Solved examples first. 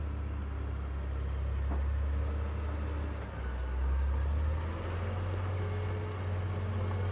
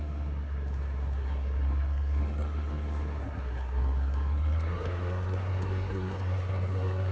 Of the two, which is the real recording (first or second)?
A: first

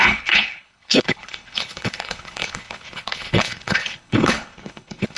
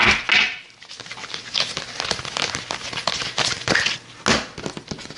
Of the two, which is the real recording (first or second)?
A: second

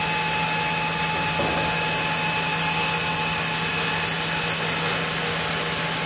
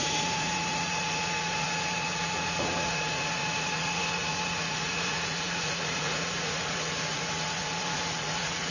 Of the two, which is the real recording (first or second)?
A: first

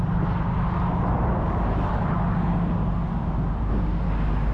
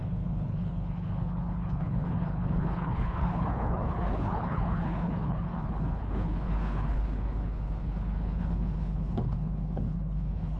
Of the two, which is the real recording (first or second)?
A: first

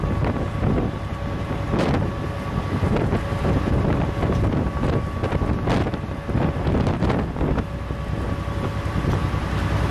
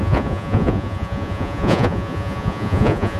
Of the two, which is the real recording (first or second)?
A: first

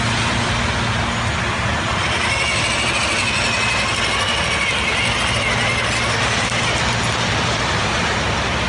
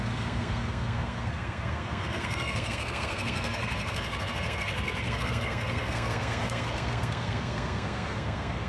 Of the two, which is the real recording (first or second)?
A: first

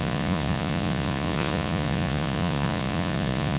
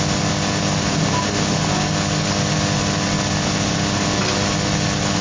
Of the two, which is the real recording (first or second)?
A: second